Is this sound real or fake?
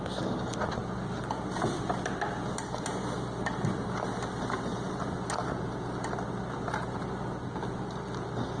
real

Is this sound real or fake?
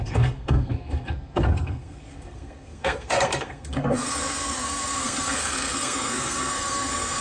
fake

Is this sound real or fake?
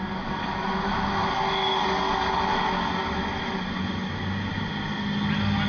real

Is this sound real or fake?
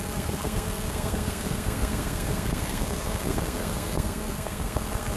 fake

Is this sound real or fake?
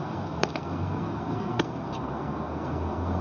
fake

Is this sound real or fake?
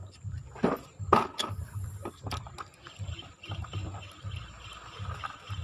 real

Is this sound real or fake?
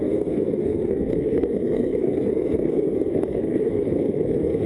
fake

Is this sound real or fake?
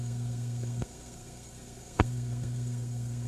fake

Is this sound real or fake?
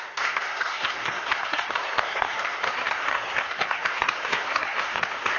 fake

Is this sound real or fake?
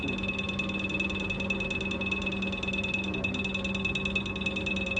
real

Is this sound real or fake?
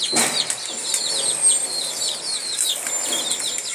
real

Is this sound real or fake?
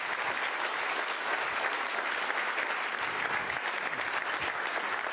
real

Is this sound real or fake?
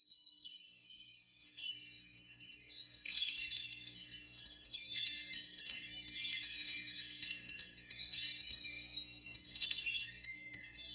fake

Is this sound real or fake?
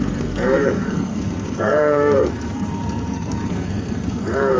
fake